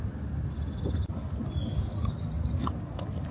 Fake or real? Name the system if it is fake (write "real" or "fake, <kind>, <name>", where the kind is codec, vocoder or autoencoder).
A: real